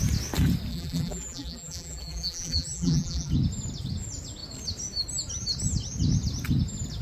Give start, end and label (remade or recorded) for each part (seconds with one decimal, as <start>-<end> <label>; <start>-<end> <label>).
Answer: 0.0-0.7 recorded; 0.7-3.3 remade; 3.3-7.0 recorded